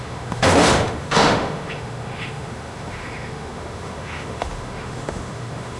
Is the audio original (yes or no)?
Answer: no